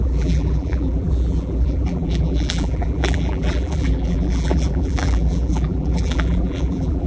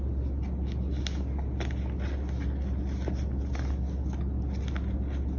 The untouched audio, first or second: second